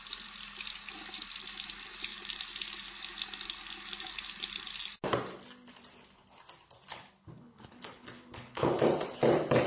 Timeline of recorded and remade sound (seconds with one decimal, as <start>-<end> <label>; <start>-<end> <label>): 0.0-6.9 recorded; 6.9-8.8 remade; 8.8-9.7 recorded